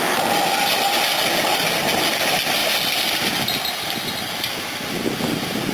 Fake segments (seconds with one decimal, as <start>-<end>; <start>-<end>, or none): none